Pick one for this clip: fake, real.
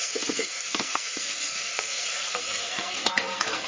fake